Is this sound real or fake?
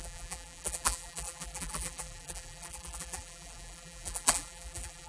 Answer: fake